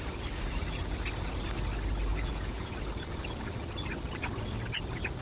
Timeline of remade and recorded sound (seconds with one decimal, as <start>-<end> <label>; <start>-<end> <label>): 0.0-2.1 recorded; 2.1-2.7 remade; 2.7-5.2 recorded